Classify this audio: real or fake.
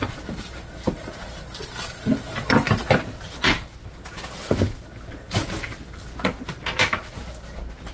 real